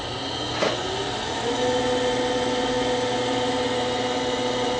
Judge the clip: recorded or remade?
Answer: recorded